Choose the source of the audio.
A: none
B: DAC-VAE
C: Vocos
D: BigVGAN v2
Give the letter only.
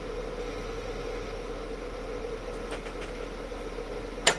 A